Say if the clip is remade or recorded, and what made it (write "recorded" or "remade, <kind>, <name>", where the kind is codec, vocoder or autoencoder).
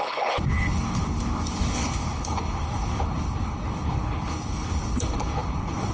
remade, codec, HILCodec